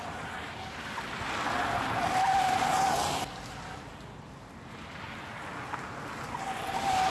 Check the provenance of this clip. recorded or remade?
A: recorded